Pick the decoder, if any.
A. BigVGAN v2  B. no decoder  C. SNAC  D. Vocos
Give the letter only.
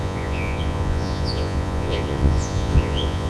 D